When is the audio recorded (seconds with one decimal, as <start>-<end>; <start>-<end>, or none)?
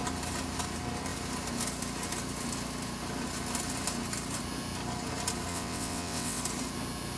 0.0-5.5; 6.4-7.2